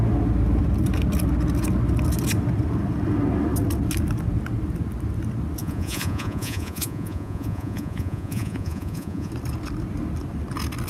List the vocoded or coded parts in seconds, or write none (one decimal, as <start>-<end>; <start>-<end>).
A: 5.6-9.3